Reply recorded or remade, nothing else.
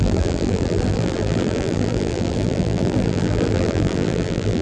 remade